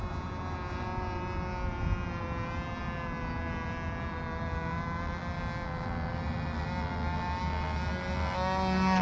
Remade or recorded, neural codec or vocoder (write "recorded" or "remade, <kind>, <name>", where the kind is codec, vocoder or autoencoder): recorded